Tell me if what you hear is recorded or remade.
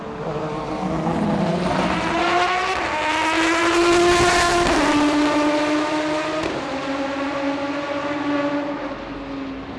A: recorded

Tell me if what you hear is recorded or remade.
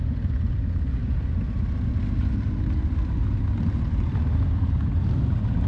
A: recorded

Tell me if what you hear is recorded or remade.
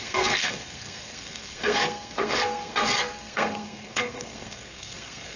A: remade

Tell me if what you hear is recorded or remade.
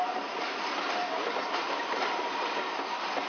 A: recorded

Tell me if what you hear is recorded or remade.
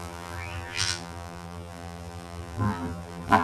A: remade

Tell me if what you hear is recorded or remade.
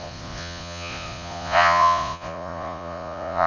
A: remade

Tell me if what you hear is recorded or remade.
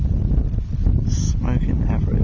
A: recorded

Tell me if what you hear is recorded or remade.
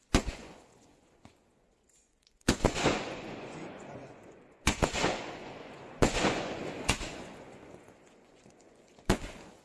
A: remade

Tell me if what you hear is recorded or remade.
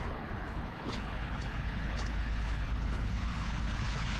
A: remade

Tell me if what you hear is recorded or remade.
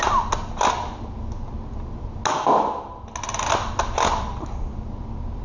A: recorded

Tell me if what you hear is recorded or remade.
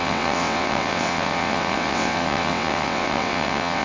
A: remade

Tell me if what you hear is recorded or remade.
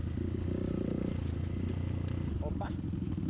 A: recorded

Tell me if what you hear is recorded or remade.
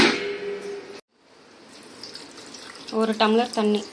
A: recorded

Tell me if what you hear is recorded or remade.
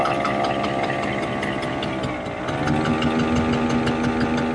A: recorded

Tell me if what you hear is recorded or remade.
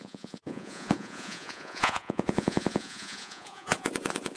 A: remade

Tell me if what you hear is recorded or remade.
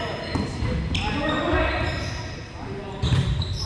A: recorded